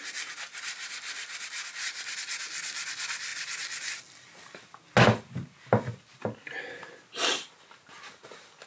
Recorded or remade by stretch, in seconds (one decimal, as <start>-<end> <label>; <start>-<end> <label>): 0.0-8.7 recorded